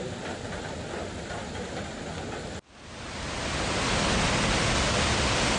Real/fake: real